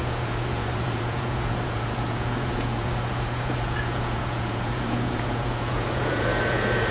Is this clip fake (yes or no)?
yes